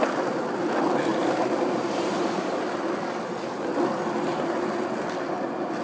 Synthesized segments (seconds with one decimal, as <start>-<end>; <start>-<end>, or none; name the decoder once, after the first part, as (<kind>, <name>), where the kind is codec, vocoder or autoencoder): none